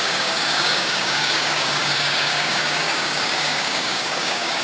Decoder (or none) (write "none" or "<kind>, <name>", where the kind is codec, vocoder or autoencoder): codec, DAC